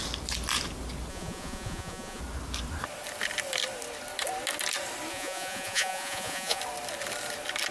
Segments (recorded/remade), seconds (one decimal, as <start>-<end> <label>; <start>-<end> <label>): 0.0-1.1 recorded; 1.1-2.2 remade; 2.2-5.1 recorded; 5.1-6.6 remade; 6.6-7.7 recorded